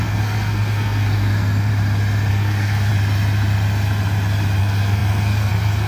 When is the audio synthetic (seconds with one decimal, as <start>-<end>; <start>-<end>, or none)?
0.0-1.7; 2.3-2.9; 4.6-5.9